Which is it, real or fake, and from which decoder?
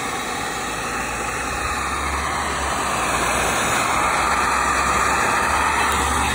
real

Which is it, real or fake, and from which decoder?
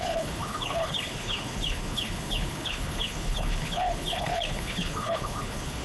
fake, codec, HILCodec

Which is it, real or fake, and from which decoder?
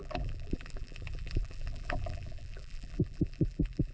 fake, vocoder, BigVGAN v2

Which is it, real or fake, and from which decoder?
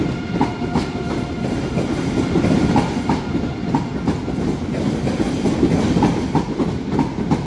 real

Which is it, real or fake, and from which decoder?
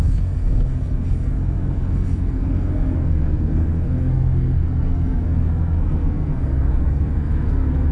fake, codec, SNAC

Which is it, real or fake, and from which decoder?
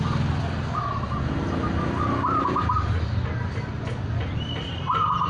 real